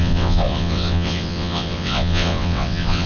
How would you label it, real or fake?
fake